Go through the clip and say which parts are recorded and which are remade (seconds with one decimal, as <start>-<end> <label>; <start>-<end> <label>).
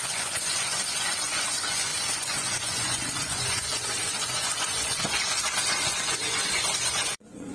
0.0-7.5 remade